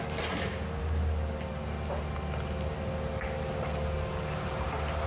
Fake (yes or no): no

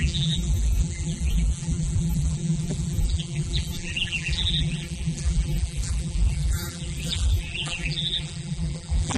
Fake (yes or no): yes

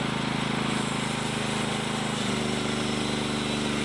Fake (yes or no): no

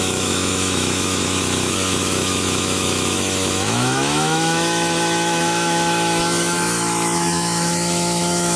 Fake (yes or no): yes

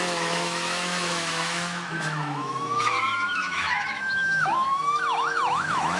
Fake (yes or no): yes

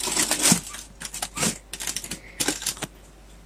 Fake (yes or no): no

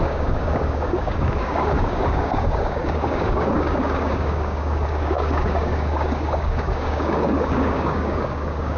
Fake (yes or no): yes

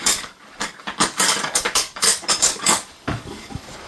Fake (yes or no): yes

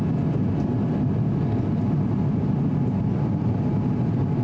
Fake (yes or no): no